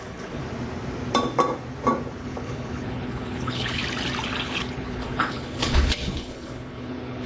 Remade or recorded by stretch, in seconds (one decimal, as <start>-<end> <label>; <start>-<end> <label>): 0.0-0.4 remade; 0.4-2.2 recorded; 2.2-3.8 remade; 3.8-4.4 recorded; 4.4-7.3 remade